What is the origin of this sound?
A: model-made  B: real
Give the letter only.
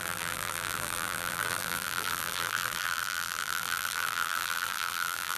A